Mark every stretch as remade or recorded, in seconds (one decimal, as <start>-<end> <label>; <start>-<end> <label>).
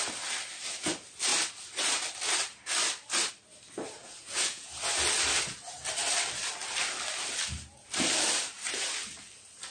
0.0-4.0 recorded; 4.0-4.8 remade; 4.8-9.7 recorded